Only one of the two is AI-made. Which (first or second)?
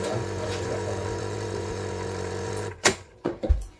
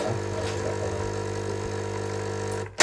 first